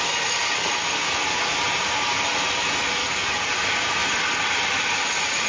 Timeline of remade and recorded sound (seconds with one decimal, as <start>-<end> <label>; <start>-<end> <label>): 0.0-3.0 recorded; 3.0-3.5 remade; 3.5-5.5 recorded